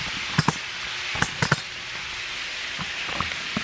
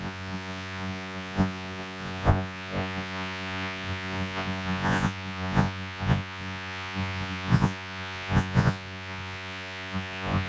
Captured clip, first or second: first